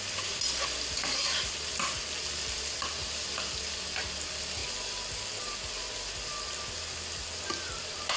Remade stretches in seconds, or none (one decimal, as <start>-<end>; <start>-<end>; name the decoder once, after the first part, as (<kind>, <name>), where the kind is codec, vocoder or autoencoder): none